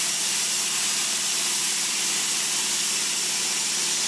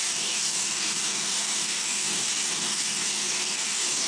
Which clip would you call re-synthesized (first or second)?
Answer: second